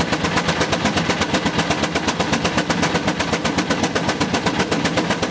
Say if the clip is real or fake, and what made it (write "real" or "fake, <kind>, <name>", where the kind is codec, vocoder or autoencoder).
real